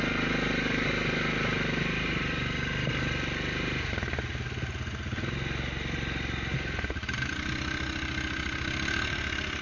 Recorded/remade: recorded